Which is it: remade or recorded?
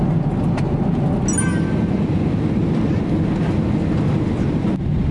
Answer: recorded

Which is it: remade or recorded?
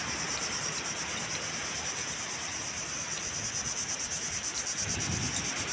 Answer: recorded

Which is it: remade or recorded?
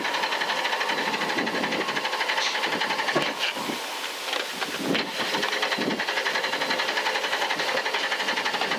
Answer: recorded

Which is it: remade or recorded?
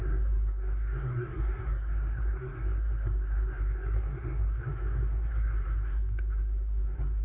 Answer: remade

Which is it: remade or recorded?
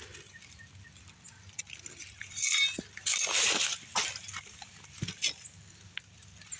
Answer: recorded